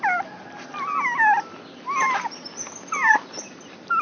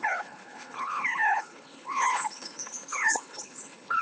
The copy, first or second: second